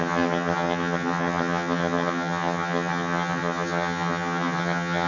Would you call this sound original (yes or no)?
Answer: no